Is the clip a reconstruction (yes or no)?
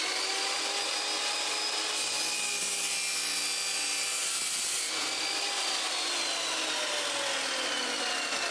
no